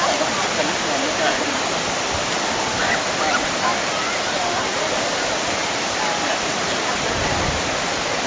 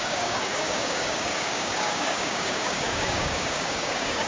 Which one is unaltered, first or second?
first